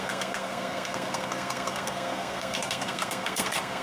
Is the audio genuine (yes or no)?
no